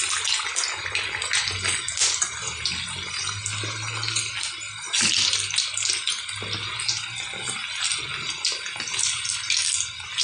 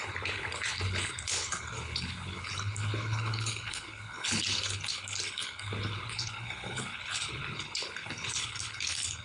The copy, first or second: second